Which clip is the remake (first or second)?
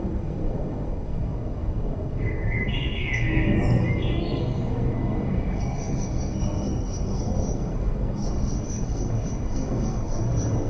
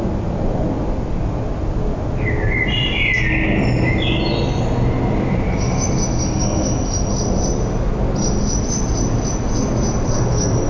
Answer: first